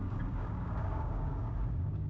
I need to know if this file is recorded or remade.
remade